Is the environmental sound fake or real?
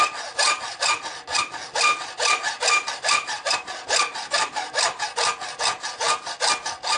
real